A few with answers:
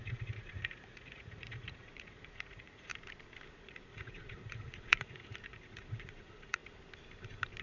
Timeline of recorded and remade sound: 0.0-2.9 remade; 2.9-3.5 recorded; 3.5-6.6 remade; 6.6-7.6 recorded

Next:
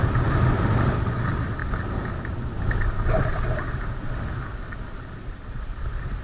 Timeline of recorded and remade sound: 0.0-6.2 recorded

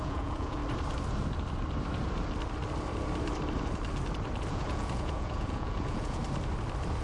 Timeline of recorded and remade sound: 0.0-0.6 remade; 0.6-4.5 recorded; 4.5-6.2 remade; 6.2-7.0 recorded